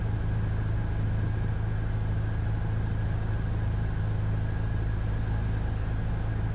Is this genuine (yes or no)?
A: yes